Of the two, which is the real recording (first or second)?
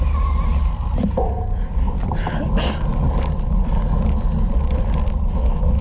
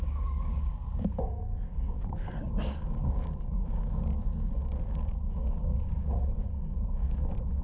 first